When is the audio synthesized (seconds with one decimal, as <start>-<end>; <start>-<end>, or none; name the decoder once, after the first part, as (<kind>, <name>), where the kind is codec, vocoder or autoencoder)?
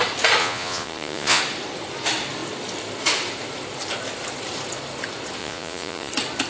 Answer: 0.4-1.4 (vocoder, Vocos); 5.4-6.1